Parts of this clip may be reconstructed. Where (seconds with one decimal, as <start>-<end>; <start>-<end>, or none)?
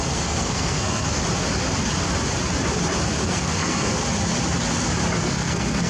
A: 0.0-1.2; 3.2-4.0; 5.2-5.9